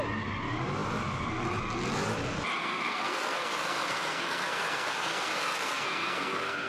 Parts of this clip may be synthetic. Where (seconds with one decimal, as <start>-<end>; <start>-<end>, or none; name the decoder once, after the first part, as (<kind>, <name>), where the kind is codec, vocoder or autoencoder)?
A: 2.6-6.7 (codec, SNAC)